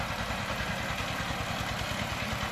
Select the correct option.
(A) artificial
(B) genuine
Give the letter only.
B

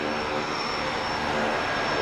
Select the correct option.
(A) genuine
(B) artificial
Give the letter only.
A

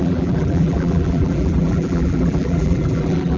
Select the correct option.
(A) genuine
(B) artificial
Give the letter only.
B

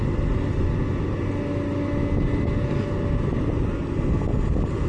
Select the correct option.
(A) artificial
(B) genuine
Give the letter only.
B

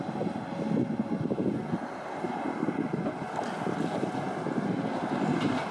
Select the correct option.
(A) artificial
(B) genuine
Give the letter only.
B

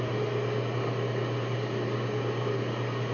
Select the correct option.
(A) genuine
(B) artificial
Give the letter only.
A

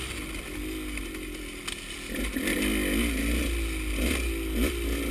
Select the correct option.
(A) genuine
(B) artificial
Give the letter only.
A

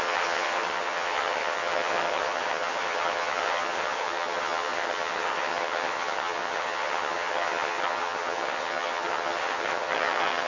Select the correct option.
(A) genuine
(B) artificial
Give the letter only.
B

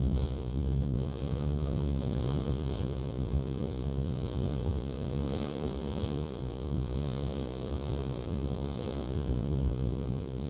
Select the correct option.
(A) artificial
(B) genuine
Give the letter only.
A